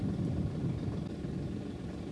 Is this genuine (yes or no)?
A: yes